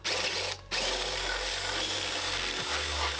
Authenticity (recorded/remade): recorded